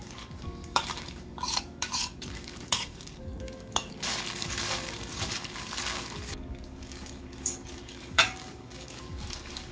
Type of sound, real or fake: fake